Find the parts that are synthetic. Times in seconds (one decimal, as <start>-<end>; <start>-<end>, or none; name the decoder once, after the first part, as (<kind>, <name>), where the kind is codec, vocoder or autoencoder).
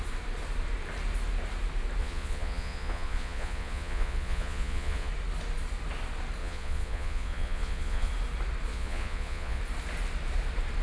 2.0-5.1 (vocoder, Vocos); 6.4-8.1; 8.7-9.6